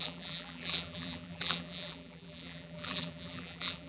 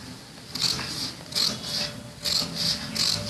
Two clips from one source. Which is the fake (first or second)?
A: first